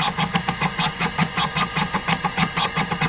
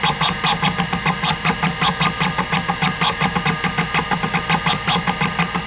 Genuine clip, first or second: second